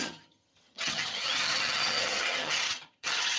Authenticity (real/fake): fake